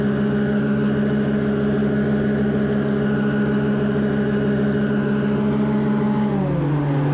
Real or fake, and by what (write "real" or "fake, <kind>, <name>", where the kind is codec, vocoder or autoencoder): real